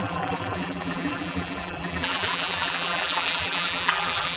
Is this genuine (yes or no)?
no